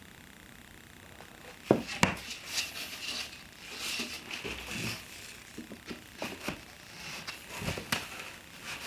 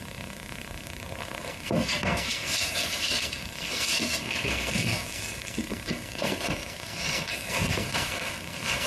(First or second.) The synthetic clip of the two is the second